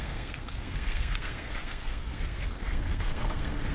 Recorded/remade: remade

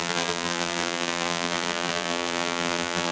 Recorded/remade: remade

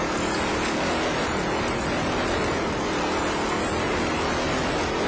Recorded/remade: recorded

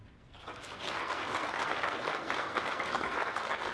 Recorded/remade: remade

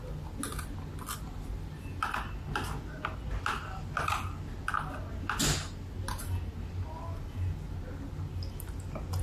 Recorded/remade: recorded